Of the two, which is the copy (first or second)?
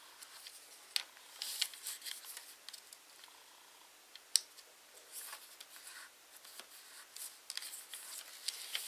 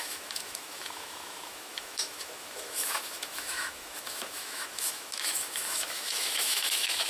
second